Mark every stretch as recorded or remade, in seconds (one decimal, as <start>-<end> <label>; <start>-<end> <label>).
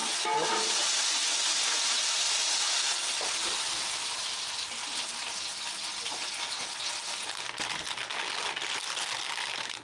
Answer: 0.0-9.8 recorded